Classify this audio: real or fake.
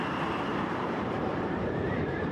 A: fake